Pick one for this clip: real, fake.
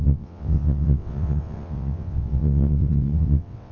fake